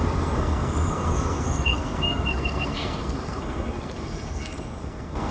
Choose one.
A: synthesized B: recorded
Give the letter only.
A